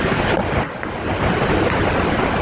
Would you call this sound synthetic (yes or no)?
no